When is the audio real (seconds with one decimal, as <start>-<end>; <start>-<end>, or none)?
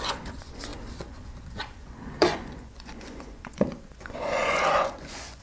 none